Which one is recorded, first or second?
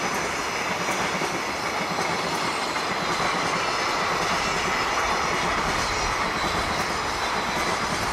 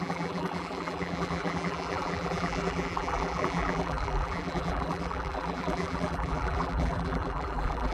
first